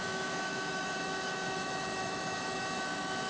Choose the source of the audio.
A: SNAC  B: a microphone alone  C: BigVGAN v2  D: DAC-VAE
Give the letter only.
D